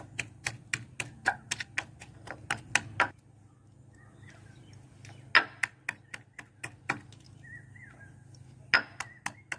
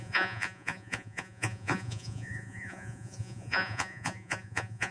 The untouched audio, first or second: first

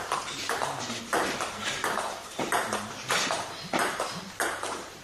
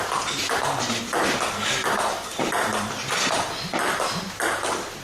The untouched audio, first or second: second